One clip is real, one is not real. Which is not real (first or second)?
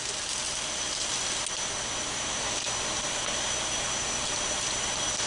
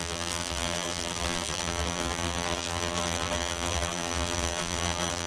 second